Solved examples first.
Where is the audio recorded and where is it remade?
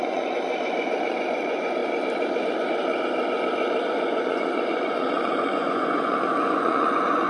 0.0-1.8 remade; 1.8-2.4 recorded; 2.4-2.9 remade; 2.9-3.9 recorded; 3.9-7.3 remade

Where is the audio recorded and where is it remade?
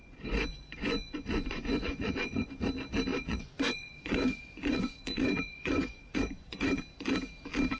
0.0-2.5 remade; 2.5-3.1 recorded; 3.1-6.8 remade; 6.8-7.8 recorded